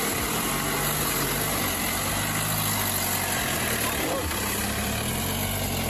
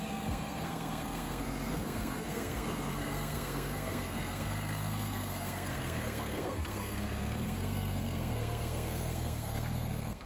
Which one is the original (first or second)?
first